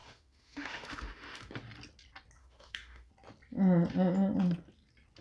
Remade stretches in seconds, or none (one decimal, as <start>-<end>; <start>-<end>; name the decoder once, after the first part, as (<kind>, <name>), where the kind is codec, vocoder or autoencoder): 0.0-1.5 (autoencoder, DAC-VAE); 2.4-3.1